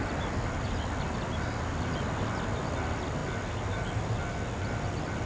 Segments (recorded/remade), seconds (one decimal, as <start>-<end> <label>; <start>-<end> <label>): 0.0-5.3 recorded